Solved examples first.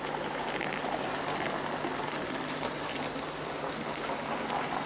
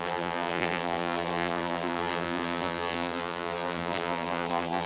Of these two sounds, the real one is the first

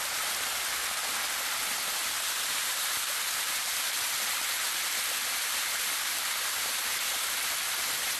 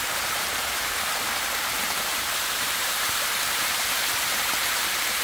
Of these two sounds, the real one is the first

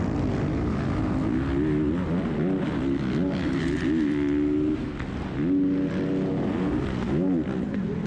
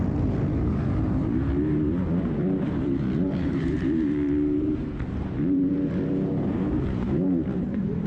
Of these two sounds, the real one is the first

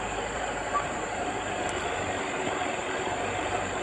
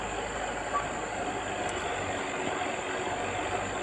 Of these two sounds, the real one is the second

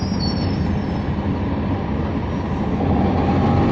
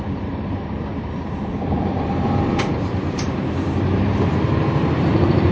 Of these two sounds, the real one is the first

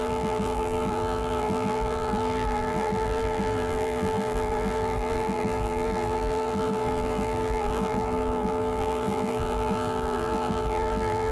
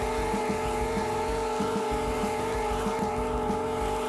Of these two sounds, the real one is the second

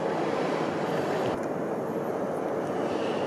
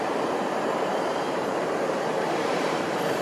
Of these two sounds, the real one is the first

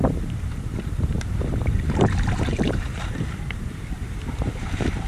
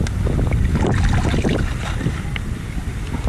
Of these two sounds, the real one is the second